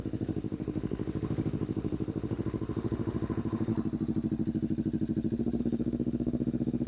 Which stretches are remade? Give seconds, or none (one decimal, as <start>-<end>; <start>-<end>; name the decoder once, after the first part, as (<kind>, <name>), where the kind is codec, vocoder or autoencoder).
0.0-3.7 (autoencoder, DAC-VAE); 5.6-6.9